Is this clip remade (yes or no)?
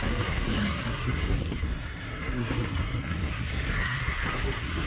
yes